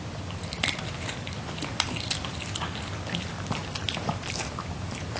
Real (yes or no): yes